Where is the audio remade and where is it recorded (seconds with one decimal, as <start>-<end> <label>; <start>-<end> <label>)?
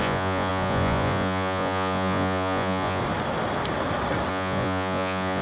0.0-3.0 remade; 3.0-4.3 recorded; 4.3-5.4 remade